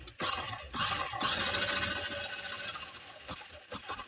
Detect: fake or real real